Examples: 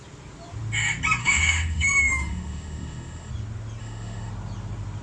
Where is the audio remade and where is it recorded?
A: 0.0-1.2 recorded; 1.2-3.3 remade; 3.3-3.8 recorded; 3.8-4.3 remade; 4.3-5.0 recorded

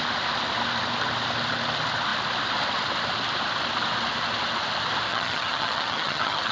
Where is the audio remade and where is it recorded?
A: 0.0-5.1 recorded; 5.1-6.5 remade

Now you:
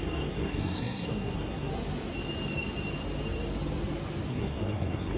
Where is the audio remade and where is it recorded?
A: 0.0-1.7 remade; 1.7-4.3 recorded; 4.3-5.2 remade